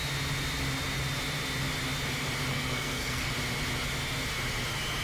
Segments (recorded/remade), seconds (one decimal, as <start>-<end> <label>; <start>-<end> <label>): 0.0-2.5 recorded; 2.5-3.3 remade; 3.3-5.0 recorded